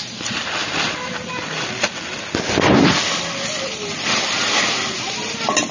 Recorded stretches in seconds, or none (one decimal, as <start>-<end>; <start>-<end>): 0.0-5.7